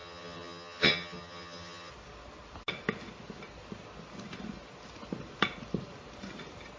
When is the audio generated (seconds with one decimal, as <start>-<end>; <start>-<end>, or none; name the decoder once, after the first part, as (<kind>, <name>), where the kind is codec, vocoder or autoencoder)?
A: 0.0-1.9 (vocoder, HiFi-GAN)

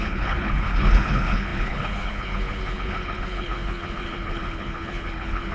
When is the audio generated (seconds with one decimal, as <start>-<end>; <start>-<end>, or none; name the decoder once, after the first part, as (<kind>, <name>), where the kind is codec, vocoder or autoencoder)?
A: 0.0-5.5 (codec, HILCodec)

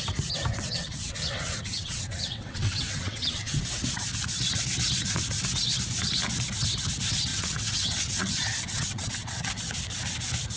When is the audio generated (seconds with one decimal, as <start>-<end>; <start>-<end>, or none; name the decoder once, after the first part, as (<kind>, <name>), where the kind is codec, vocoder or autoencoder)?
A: 0.5-3.6 (vocoder, WaveNeXt); 7.3-9.5